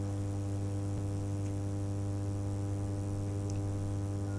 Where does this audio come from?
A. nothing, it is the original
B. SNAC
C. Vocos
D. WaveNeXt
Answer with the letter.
A